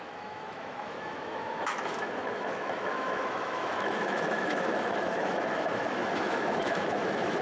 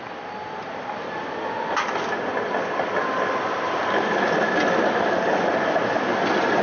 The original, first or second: second